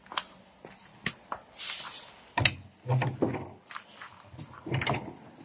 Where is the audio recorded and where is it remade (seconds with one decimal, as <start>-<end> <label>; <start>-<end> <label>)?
0.0-5.4 recorded